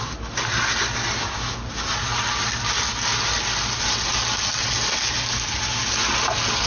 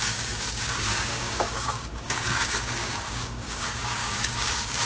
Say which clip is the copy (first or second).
second